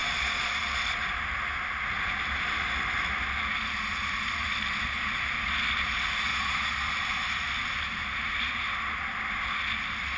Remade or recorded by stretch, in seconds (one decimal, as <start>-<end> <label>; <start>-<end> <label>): 0.0-0.6 remade; 0.6-6.3 recorded; 6.3-6.9 remade; 6.9-10.2 recorded